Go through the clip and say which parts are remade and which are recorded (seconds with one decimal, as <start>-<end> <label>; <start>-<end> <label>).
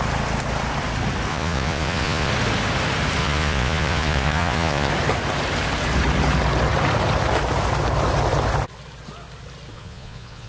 0.0-1.3 recorded; 1.3-2.3 remade; 2.3-3.2 recorded; 3.2-4.9 remade; 4.9-9.7 recorded; 9.7-10.5 remade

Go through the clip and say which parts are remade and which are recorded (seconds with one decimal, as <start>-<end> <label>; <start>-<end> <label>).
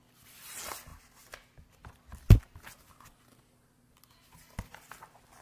0.0-5.4 recorded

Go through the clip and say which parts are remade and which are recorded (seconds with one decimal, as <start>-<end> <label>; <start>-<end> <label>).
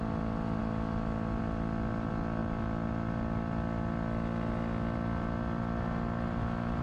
0.0-6.8 recorded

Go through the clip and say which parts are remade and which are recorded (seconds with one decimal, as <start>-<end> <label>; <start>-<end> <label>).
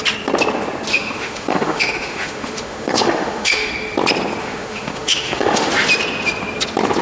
0.0-0.9 recorded; 0.9-3.7 remade; 3.7-4.4 recorded; 4.4-5.7 remade; 5.7-7.0 recorded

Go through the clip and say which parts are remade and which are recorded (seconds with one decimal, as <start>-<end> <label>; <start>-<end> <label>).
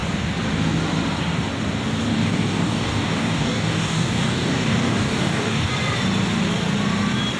0.0-2.1 recorded; 2.1-5.7 remade; 5.7-7.4 recorded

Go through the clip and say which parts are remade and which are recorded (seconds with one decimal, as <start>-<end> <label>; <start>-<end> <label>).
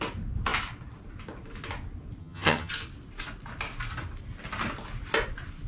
0.0-2.2 recorded; 2.2-2.7 remade; 2.7-5.7 recorded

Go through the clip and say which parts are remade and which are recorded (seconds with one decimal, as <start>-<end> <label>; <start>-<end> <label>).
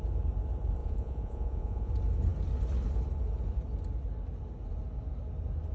0.0-0.8 recorded; 0.8-1.9 remade; 1.9-5.7 recorded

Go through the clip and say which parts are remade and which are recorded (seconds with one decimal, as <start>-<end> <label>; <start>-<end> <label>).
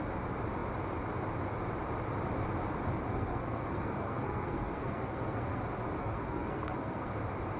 0.0-3.1 recorded; 3.1-5.6 remade; 5.6-6.0 recorded; 6.0-7.1 remade; 7.1-7.6 recorded